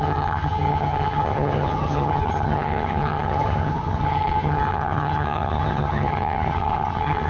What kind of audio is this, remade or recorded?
remade